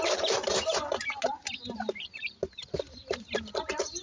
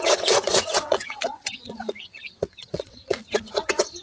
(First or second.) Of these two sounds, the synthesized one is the second